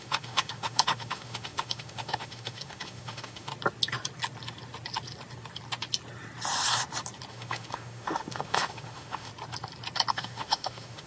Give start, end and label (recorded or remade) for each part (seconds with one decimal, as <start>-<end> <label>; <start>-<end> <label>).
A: 0.0-3.5 remade; 3.5-7.3 recorded; 7.3-9.3 remade; 9.3-10.1 recorded; 10.1-11.1 remade